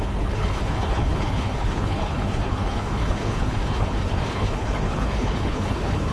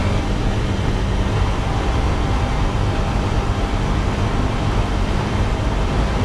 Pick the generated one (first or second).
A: first